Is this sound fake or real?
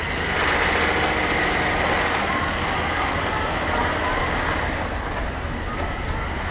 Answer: real